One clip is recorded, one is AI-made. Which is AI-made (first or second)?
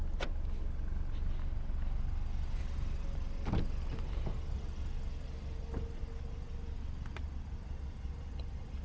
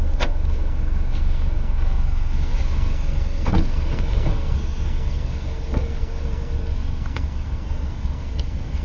second